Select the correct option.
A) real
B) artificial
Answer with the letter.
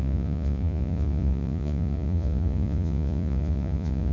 B